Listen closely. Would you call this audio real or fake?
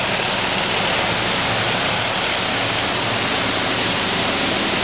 real